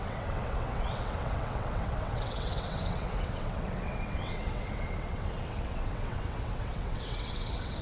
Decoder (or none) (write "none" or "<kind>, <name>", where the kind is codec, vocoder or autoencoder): vocoder, WaveNeXt